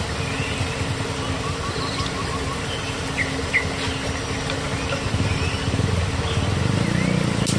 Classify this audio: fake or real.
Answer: real